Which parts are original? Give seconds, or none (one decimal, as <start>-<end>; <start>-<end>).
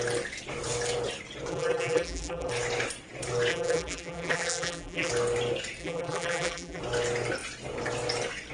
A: 0.0-1.5; 2.5-3.5; 5.1-5.8; 6.8-8.5